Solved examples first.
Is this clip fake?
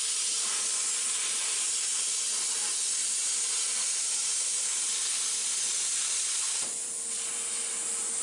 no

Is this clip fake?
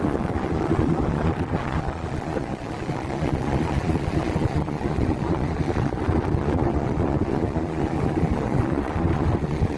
yes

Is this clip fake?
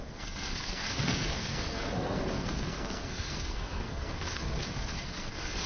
yes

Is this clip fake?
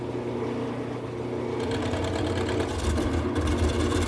no